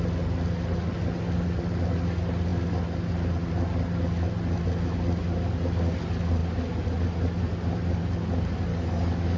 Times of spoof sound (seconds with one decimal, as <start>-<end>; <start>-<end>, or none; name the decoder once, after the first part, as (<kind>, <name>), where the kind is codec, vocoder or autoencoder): 8.7-9.4 (codec, DAC)